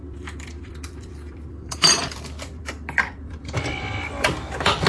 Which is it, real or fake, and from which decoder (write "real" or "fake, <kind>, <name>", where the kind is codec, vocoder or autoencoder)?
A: fake, vocoder, BigVGAN v2